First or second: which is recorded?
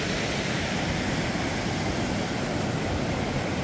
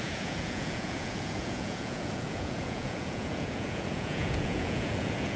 first